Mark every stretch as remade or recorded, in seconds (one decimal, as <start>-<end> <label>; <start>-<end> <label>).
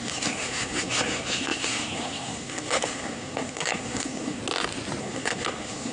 0.0-4.4 remade; 4.4-5.0 recorded; 5.0-5.9 remade